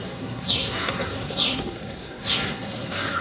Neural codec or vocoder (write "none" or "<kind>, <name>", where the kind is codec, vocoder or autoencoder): codec, SNAC